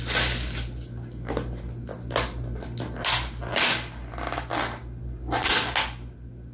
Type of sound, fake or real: real